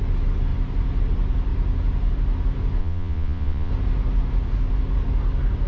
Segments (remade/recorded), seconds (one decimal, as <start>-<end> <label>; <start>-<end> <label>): 0.0-2.8 recorded; 2.8-3.7 remade; 3.7-5.7 recorded